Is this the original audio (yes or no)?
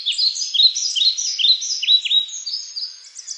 yes